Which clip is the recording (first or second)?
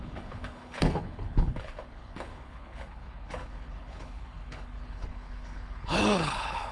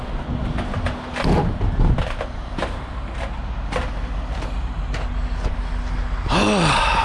second